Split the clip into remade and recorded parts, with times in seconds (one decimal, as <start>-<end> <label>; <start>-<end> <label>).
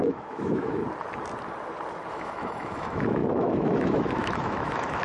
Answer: 0.0-0.8 remade; 0.8-2.1 recorded; 2.1-5.0 remade